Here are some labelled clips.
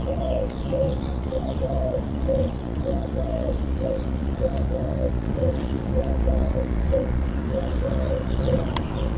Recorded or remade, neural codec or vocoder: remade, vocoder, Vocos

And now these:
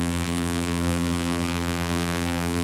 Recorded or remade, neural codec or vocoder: remade, vocoder, BigVGAN v2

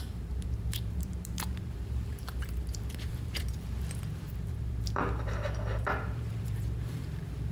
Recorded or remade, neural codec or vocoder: remade, vocoder, BigVGAN v2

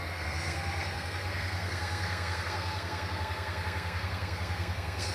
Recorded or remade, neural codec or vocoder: remade, codec, SNAC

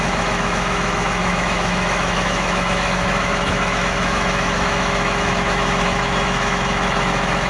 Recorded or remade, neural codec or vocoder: remade, autoencoder, DAC-VAE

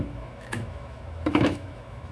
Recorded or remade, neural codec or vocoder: remade, autoencoder, DAC-VAE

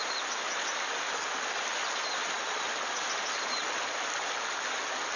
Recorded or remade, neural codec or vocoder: recorded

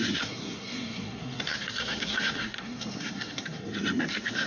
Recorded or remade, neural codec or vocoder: remade, codec, SNAC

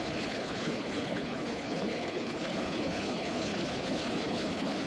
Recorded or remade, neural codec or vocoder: remade, codec, HILCodec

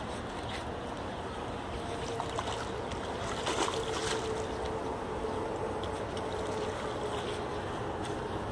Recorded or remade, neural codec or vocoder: recorded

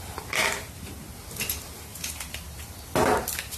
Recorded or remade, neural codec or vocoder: recorded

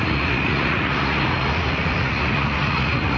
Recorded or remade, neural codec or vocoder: remade, vocoder, Vocos